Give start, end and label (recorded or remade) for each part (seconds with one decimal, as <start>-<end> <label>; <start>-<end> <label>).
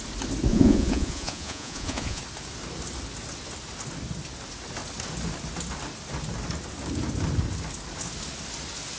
0.0-0.5 recorded; 0.5-2.2 remade; 2.2-9.0 recorded